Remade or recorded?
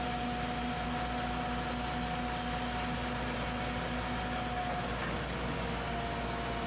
recorded